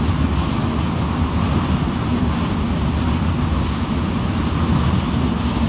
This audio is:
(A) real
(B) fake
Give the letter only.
A